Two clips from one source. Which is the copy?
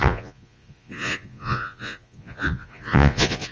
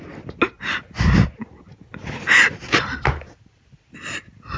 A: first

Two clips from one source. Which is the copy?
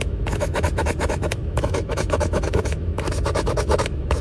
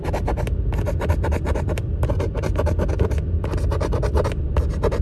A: first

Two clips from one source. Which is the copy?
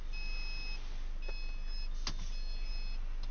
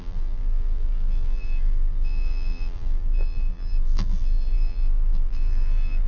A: second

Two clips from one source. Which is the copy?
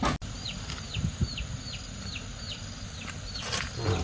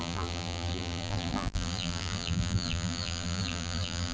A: second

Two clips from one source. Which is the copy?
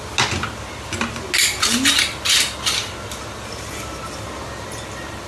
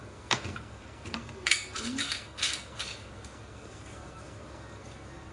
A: second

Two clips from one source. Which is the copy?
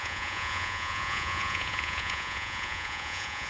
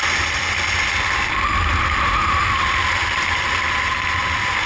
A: first